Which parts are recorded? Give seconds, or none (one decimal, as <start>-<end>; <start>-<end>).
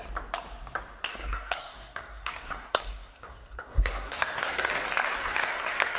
0.0-1.1; 4.7-5.2